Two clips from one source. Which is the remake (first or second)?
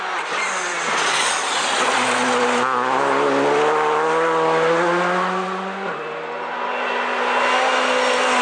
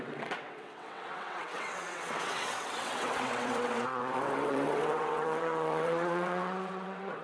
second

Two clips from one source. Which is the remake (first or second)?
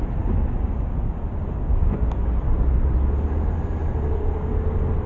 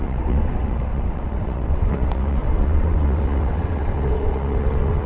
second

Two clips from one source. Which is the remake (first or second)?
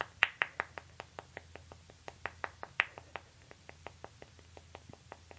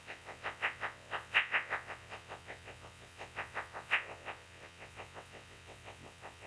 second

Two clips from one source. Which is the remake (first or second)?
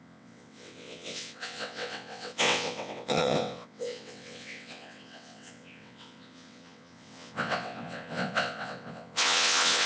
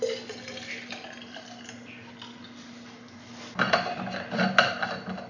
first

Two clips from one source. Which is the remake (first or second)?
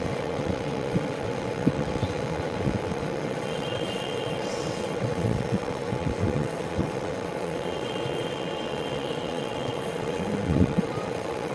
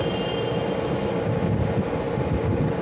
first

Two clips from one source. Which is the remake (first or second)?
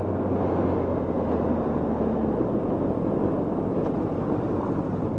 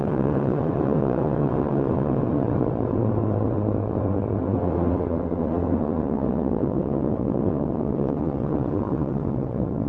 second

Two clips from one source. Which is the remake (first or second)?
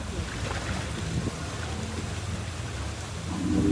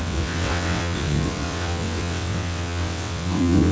second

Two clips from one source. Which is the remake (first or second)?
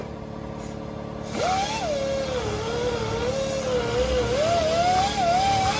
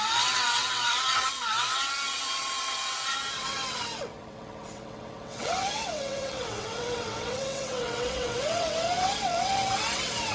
second